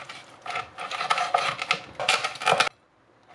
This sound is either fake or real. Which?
real